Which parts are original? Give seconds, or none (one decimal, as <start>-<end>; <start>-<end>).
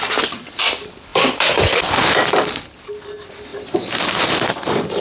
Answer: none